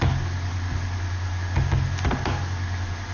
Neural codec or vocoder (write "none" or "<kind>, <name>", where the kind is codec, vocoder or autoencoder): none